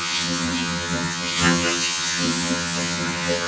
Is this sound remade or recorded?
remade